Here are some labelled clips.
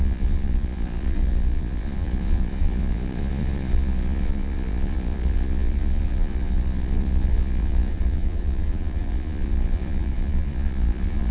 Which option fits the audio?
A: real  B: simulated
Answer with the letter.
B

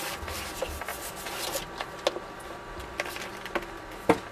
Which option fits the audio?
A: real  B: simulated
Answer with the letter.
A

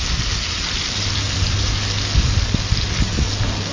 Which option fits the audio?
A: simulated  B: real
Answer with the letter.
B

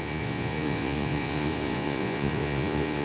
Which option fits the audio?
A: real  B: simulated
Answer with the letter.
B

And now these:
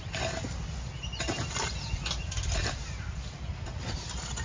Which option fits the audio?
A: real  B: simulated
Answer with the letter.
A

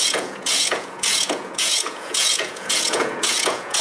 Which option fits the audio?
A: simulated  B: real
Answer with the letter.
A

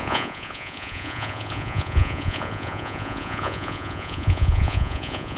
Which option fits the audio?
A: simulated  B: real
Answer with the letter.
A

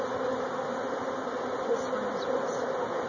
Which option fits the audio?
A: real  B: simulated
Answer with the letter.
A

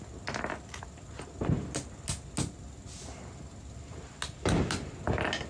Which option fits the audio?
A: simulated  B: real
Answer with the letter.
B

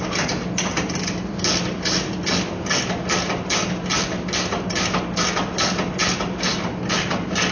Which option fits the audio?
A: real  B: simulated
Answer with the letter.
A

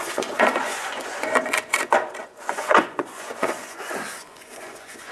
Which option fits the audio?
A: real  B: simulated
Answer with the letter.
B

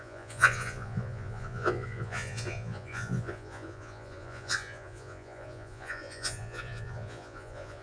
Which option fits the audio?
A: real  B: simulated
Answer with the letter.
B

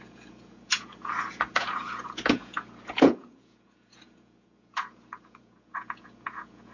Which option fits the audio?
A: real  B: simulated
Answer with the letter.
B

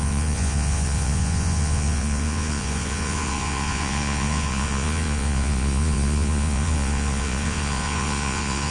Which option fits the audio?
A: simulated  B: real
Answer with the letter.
A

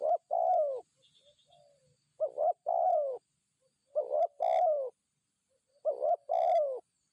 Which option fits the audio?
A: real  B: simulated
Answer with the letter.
A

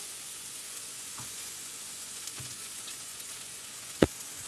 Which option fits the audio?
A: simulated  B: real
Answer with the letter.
A